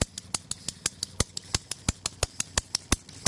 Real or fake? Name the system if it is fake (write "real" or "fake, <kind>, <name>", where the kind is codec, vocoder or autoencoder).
real